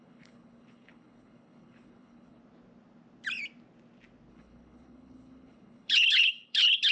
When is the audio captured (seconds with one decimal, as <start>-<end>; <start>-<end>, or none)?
2.4-4.3